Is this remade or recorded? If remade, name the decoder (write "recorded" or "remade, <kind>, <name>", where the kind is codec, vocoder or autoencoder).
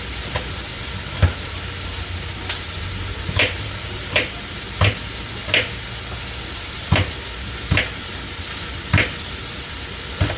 recorded